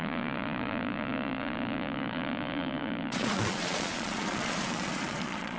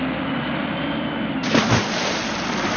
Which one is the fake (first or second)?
first